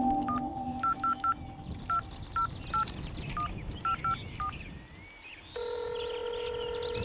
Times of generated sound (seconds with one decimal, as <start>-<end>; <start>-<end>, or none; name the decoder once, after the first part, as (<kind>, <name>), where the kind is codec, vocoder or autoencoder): 0.7-1.3 (autoencoder, DAC-VAE)